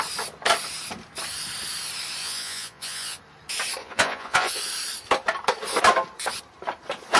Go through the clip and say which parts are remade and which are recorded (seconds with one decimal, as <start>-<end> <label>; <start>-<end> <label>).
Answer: 0.0-2.2 recorded; 2.2-3.2 remade; 3.2-3.8 recorded; 3.8-4.6 remade; 4.6-7.2 recorded